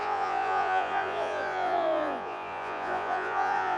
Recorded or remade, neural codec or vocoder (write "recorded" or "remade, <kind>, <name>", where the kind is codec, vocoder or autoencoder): remade, vocoder, Vocos